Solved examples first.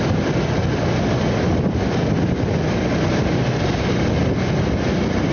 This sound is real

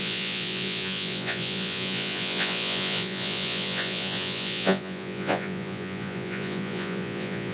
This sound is fake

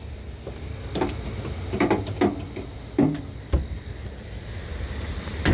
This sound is real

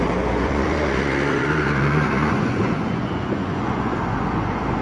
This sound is fake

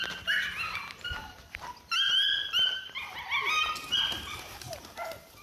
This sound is real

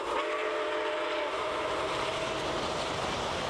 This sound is real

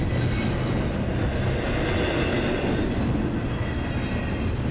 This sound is real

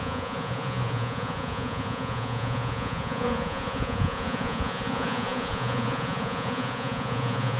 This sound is fake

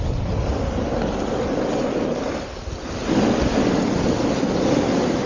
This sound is real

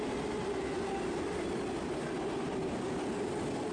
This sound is real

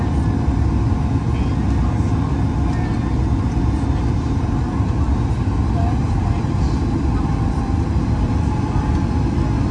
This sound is real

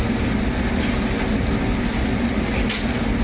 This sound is real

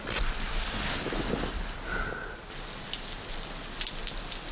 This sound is real